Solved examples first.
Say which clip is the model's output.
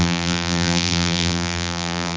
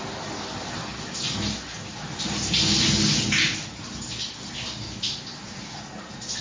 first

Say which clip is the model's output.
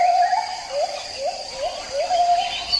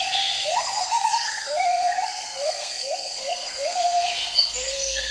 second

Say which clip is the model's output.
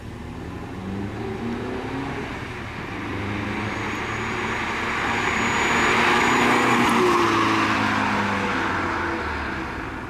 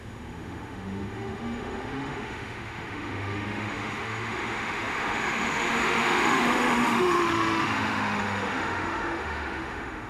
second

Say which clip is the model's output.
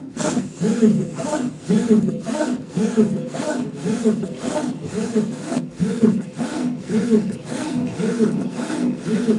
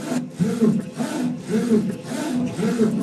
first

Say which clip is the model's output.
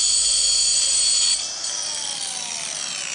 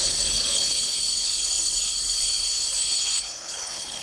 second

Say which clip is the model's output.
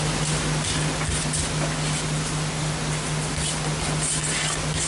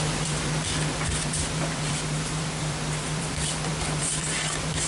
second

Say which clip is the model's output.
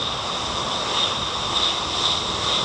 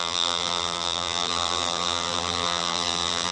second